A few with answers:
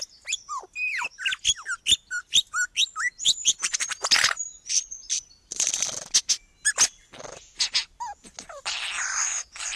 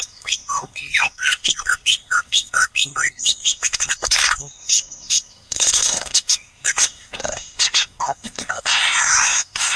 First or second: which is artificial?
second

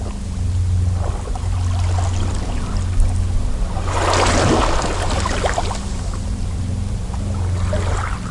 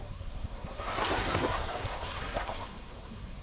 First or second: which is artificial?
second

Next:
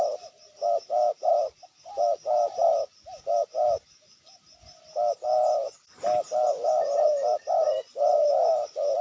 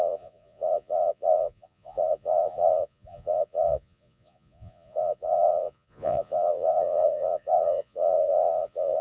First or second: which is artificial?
second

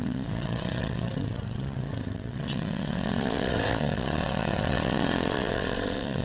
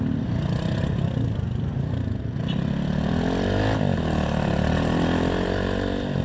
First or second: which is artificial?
first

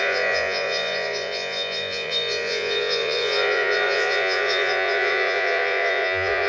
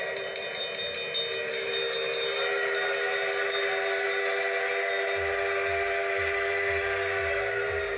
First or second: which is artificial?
first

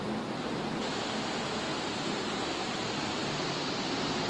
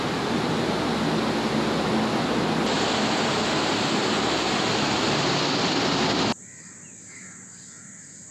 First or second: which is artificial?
first